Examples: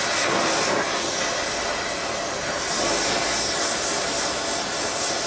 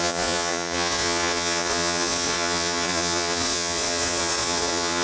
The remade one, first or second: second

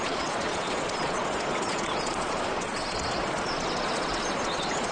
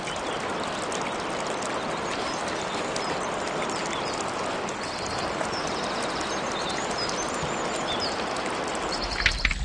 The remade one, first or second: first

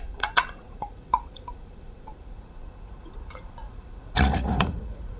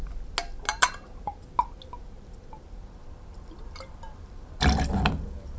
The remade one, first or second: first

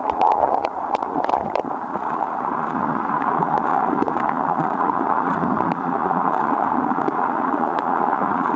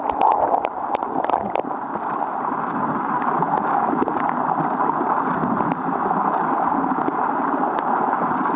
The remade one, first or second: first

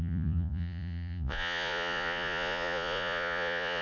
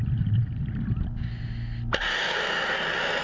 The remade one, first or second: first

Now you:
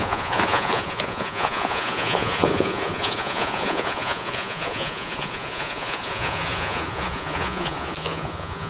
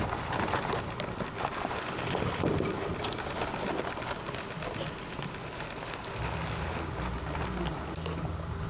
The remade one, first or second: first